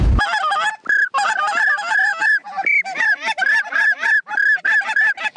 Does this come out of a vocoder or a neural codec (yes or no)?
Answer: no